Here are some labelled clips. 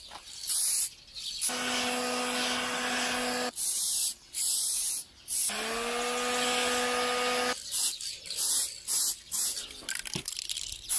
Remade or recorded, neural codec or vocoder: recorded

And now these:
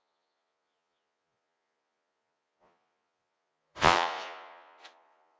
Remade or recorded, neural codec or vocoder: remade, vocoder, Vocos